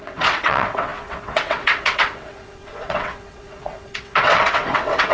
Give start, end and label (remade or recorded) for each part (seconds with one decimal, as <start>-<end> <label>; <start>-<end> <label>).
0.0-5.1 remade